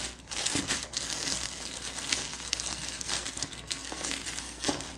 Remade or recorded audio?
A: remade